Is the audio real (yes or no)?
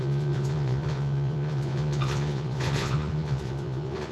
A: no